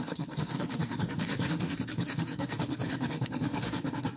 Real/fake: fake